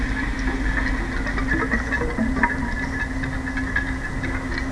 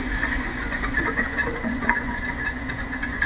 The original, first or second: first